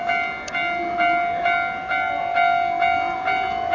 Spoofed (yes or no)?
no